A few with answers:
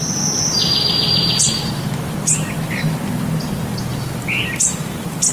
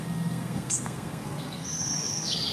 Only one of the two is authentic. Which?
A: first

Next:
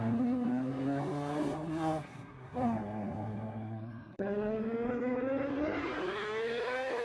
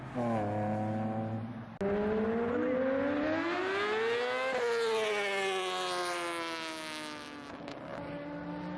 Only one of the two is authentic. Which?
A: second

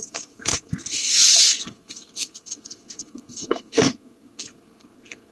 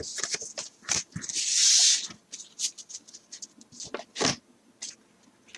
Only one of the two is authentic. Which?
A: second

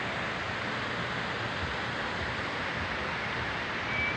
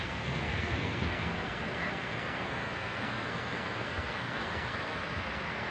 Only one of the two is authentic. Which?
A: first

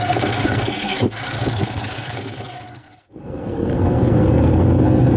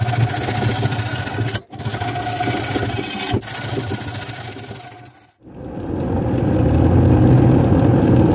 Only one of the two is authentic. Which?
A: second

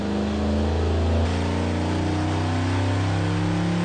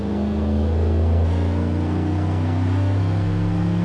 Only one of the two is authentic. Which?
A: first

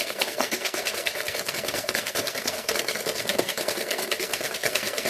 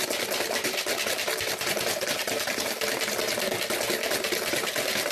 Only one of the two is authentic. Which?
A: second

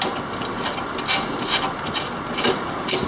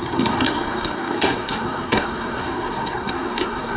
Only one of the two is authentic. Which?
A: first